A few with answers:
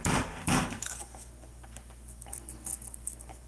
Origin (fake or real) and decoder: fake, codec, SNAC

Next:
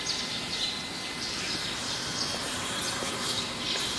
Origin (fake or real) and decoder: real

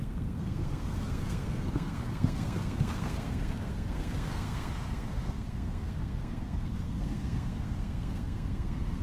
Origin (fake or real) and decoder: fake, codec, SNAC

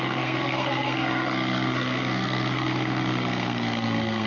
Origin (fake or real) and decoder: fake, codec, SNAC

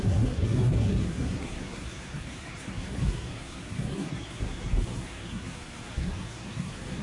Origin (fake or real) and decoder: fake, codec, SNAC